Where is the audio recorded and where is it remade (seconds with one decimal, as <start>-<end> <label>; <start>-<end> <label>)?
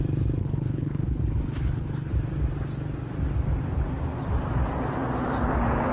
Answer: 0.0-0.4 recorded; 0.4-2.1 remade; 2.1-5.9 recorded